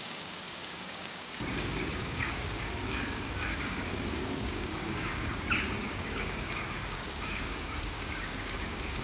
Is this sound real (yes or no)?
no